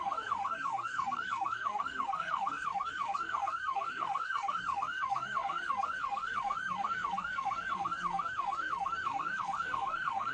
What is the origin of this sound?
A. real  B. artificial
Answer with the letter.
B